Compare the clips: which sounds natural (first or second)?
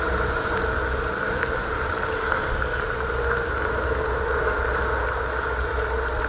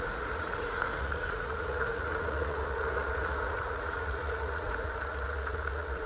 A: first